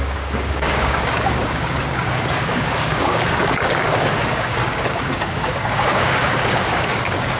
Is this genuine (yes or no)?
no